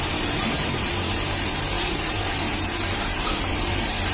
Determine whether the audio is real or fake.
fake